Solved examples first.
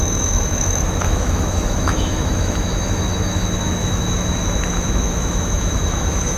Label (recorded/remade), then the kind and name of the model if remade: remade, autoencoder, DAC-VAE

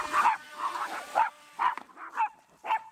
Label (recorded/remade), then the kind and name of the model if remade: recorded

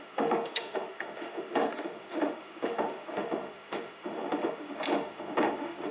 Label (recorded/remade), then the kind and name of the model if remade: remade, autoencoder, DAC-VAE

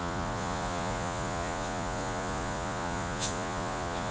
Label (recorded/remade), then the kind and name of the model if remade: remade, vocoder, Vocos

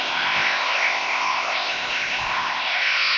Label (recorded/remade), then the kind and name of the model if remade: remade, codec, ZipCodec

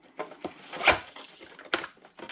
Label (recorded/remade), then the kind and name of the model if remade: recorded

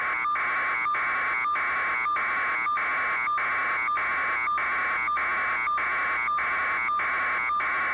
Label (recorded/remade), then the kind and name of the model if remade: recorded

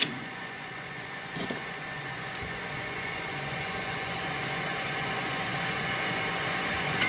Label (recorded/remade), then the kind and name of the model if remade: remade, vocoder, Vocos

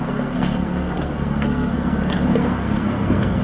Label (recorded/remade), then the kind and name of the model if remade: remade, codec, SNAC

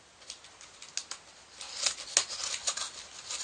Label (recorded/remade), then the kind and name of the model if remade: recorded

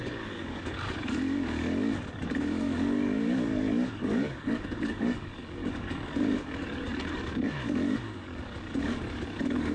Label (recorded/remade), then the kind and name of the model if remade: remade, codec, DAC